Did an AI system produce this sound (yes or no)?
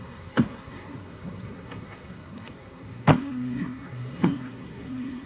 yes